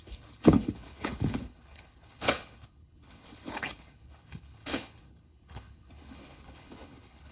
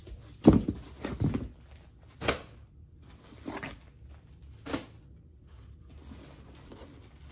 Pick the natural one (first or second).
second